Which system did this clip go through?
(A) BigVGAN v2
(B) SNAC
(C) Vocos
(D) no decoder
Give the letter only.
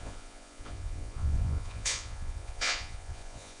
C